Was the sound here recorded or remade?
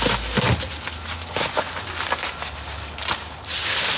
recorded